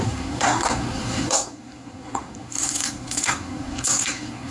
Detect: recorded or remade remade